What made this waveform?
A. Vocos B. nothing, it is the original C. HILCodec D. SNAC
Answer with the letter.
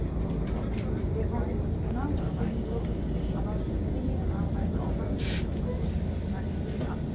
B